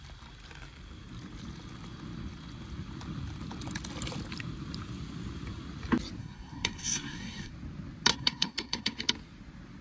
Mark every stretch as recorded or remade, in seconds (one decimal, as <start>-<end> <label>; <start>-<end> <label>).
0.0-6.2 recorded; 6.2-7.5 remade; 7.5-8.1 recorded; 8.1-9.0 remade; 9.0-9.8 recorded